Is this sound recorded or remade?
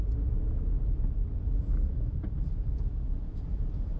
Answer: remade